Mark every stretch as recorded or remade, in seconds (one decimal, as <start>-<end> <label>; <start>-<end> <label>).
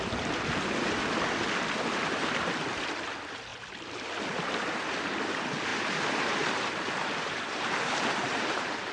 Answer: 0.0-5.7 recorded; 5.7-8.9 remade